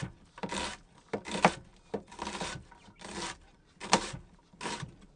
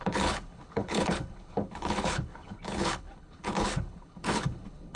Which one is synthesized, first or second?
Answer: second